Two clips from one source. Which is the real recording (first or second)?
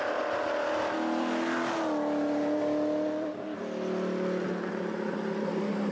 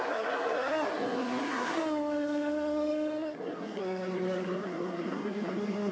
first